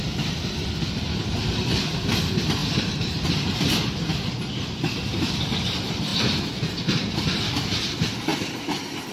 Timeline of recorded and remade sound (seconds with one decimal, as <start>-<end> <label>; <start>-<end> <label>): 0.0-2.6 remade; 2.6-3.5 recorded; 3.5-4.1 remade; 4.1-5.0 recorded; 5.0-6.1 remade; 6.1-6.7 recorded; 6.7-8.3 remade; 8.3-9.1 recorded